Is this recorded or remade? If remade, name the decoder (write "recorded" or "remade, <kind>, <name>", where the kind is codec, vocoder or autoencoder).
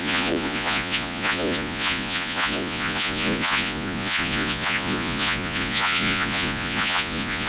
remade, vocoder, Vocos